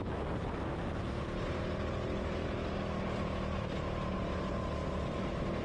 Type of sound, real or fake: real